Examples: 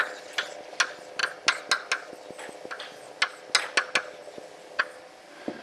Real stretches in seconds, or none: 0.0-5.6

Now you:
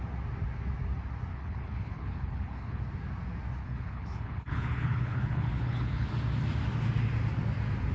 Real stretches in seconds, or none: 0.0-1.3; 2.8-3.6; 6.1-7.9

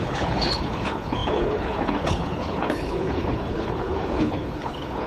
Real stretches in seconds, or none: none

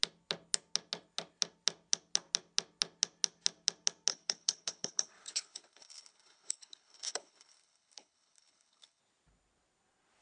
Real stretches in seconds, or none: 0.0-4.1; 9.0-10.2

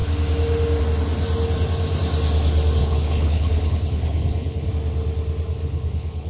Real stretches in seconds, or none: 0.0-2.8; 4.7-5.6

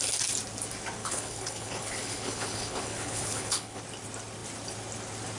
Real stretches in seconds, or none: 0.0-1.0; 3.8-5.4

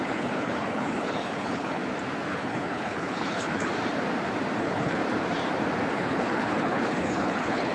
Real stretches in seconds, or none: 1.8-2.3; 3.7-4.6; 5.0-5.9

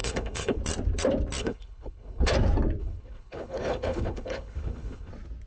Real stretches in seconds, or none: 0.6-1.4; 2.3-2.8; 5.1-5.5